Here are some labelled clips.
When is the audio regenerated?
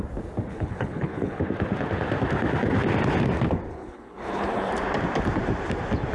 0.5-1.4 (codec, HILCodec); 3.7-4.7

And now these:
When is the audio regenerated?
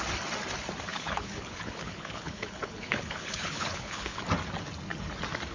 0.9-4.2 (codec, HILCodec)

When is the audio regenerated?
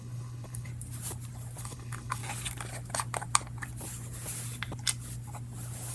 0.0-0.7 (codec, HILCodec); 1.6-2.2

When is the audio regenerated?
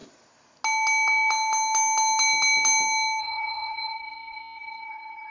3.2-5.3 (codec, HILCodec)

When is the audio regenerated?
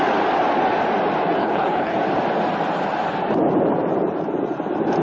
1.4-2.0 (codec, HILCodec)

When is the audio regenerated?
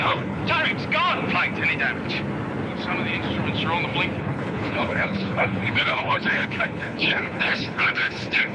0.0-0.4 (codec, HILCodec); 4.2-8.5